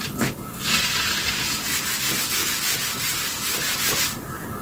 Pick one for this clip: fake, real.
real